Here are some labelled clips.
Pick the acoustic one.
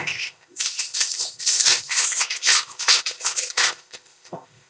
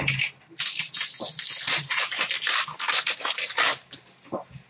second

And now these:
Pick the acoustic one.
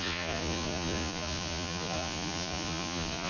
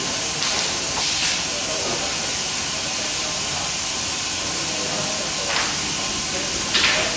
second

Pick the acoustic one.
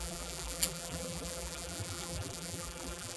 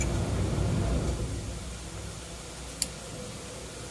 second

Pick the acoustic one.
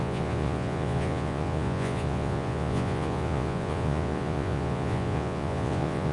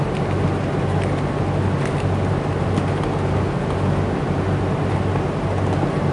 second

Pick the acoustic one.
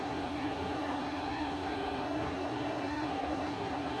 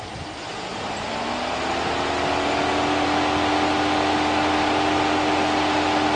second